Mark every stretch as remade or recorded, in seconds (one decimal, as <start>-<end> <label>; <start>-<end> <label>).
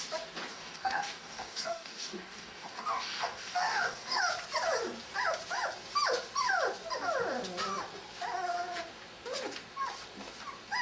0.0-0.5 recorded; 0.5-4.2 remade; 4.2-10.8 recorded